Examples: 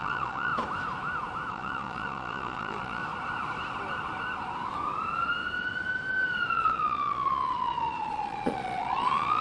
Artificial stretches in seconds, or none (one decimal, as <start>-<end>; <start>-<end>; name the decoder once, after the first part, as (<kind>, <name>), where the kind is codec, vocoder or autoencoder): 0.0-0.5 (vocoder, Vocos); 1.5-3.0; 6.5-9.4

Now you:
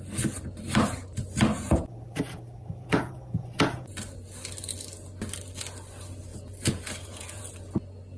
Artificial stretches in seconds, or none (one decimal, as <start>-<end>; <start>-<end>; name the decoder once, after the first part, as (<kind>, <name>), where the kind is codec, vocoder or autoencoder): 1.5-4.1 (vocoder, Vocos); 6.3-7.4

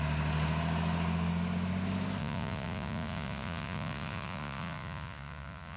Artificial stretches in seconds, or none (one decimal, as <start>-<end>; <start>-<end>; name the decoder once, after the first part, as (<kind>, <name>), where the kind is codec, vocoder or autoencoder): 2.2-5.8 (vocoder, Vocos)